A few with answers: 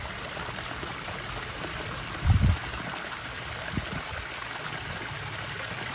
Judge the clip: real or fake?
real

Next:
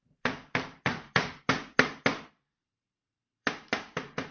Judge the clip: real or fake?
fake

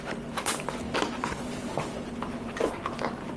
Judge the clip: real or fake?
real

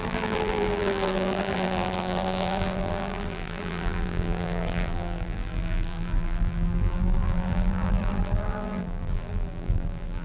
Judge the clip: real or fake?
fake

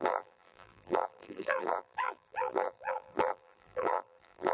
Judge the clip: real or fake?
fake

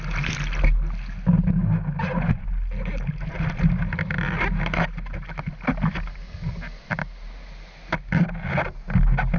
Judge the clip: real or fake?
real